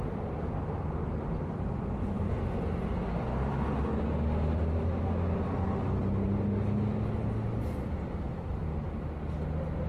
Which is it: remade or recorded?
recorded